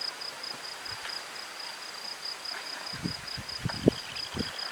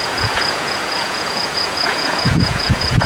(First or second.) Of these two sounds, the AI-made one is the second